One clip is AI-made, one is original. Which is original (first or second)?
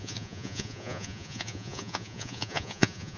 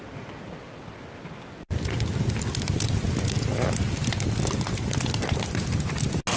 second